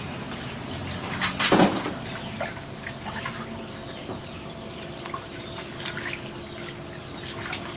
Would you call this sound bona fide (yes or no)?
yes